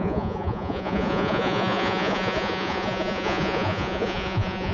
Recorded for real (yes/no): no